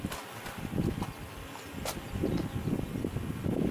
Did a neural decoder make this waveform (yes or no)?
no